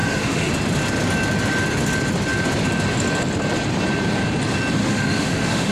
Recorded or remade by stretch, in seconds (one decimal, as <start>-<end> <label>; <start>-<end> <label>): 0.0-0.5 remade; 0.5-4.8 recorded; 4.8-5.7 remade